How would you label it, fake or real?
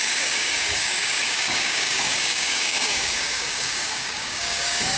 fake